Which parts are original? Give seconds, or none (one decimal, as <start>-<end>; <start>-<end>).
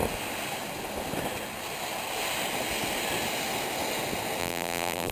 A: 0.0-4.4